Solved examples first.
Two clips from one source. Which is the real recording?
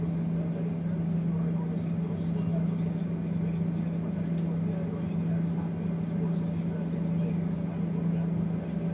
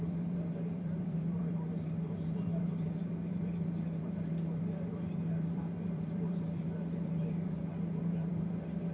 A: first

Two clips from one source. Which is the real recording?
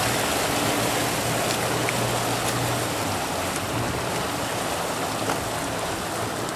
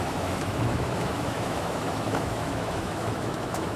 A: first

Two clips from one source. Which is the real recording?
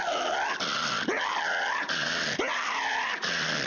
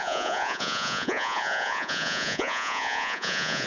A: first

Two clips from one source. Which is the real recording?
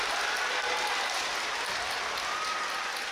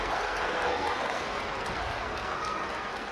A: first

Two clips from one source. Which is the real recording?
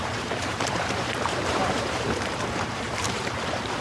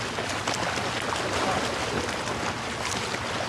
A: second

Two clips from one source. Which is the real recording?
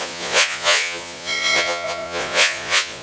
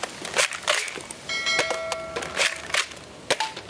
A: second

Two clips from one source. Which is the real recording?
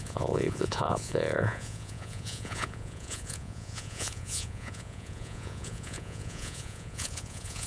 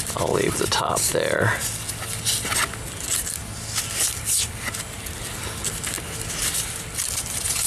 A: second